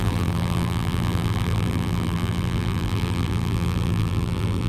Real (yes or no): no